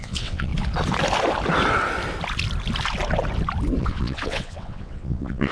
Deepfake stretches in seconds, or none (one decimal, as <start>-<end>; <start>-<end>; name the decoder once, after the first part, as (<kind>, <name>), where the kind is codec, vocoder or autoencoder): 0.0-0.5 (vocoder, WaveNeXt); 3.8-5.5